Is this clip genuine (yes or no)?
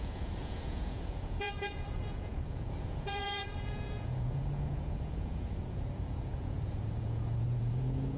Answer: no